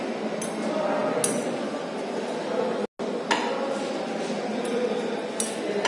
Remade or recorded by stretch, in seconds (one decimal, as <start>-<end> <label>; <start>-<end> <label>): 0.0-5.9 recorded